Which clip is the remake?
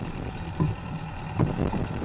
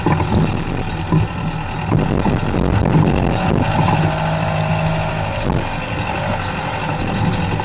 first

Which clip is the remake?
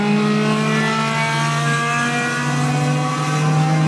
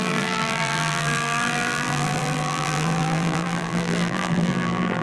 second